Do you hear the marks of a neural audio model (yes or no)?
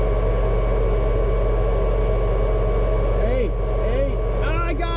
no